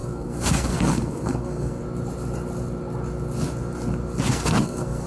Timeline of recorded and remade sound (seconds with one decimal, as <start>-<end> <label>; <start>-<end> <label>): 0.0-1.8 remade; 1.8-4.3 recorded; 4.3-5.1 remade